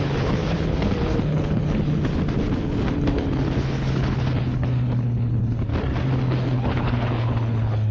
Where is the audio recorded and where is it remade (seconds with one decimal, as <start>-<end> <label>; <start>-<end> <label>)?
0.0-2.1 remade; 2.1-2.9 recorded; 2.9-5.7 remade; 5.7-6.3 recorded; 6.3-7.9 remade